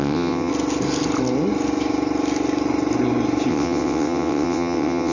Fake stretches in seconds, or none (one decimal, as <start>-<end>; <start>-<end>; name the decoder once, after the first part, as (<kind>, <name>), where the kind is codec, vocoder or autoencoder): 0.0-0.5 (vocoder, WaveNeXt); 3.5-5.1